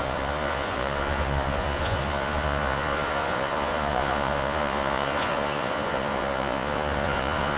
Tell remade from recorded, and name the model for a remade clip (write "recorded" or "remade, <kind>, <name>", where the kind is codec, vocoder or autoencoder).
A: remade, vocoder, Vocos